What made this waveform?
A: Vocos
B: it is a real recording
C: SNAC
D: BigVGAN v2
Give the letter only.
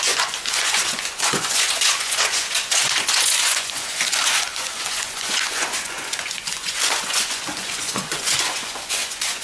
A